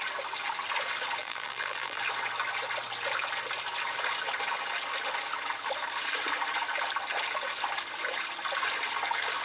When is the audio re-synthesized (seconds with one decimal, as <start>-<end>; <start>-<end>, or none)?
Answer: 1.2-2.0